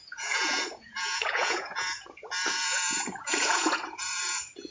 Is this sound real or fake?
fake